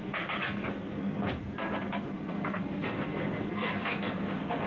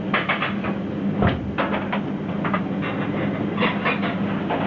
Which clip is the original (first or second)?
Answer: second